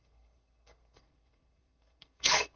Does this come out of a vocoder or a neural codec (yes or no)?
yes